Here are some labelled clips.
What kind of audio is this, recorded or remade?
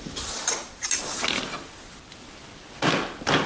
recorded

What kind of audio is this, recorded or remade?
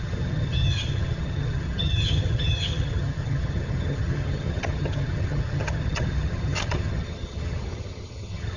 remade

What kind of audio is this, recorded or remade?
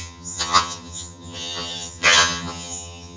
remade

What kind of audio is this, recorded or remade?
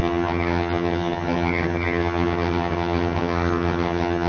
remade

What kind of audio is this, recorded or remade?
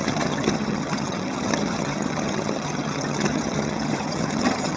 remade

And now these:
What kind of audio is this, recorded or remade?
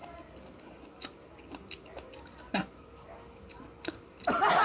recorded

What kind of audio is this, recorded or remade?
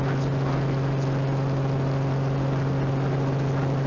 recorded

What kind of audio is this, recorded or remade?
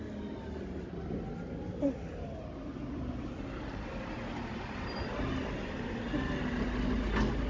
recorded